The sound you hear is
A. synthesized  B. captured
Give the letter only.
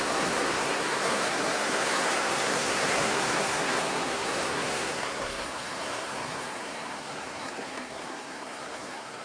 A